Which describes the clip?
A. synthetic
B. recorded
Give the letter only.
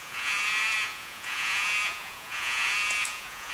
A